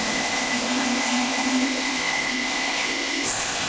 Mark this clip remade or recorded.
remade